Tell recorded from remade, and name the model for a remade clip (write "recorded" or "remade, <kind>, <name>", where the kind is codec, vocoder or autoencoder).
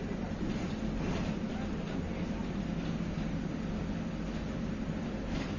recorded